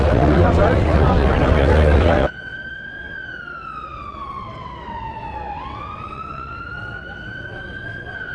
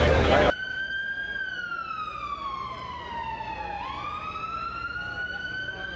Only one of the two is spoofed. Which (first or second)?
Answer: first